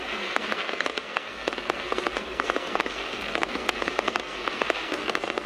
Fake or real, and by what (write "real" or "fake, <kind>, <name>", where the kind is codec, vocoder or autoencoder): fake, codec, SNAC